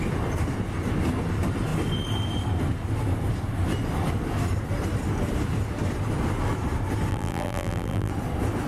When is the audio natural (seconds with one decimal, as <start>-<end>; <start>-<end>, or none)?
0.0-7.1; 8.1-8.7